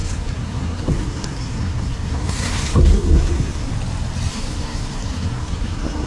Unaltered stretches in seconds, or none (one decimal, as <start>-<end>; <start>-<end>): 3.7-4.3